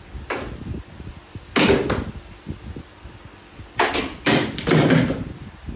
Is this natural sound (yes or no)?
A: yes